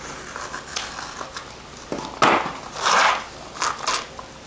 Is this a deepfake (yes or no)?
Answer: no